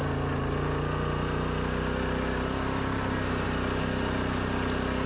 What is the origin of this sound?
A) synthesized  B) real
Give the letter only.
B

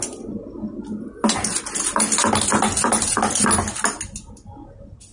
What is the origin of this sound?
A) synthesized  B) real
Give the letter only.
B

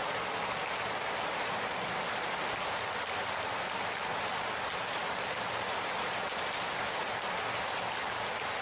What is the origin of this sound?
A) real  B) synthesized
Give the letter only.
A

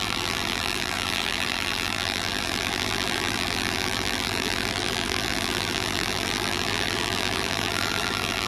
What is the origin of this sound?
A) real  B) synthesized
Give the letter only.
B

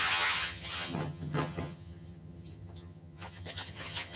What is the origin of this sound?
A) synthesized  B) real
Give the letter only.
A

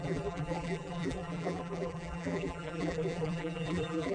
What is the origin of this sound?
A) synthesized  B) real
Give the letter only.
A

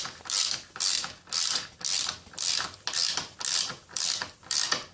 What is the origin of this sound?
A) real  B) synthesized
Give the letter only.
A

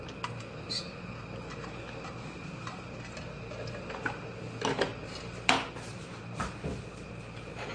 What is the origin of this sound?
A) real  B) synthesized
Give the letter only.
A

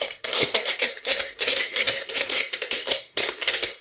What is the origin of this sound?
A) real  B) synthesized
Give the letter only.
B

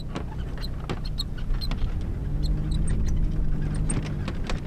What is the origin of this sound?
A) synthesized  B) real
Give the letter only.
B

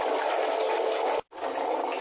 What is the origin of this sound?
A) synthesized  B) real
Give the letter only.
B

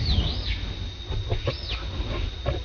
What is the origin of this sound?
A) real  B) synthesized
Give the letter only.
A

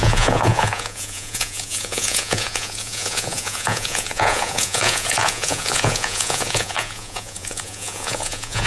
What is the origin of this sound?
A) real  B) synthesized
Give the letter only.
B